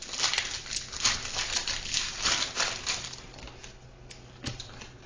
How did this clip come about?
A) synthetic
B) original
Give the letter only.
B